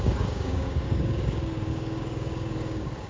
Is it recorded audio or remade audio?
remade